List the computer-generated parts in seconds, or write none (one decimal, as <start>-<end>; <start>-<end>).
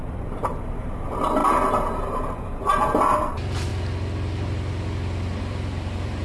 0.0-3.7; 5.4-6.2